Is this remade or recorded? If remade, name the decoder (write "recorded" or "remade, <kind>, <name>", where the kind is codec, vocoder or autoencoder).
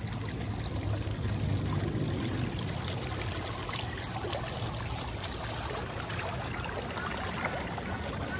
recorded